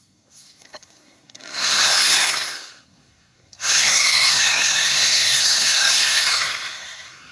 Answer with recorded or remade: remade